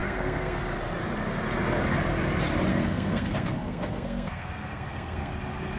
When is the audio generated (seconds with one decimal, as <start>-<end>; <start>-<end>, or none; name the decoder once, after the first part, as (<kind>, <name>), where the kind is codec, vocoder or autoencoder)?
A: 0.0-0.6 (codec, SNAC); 2.7-5.3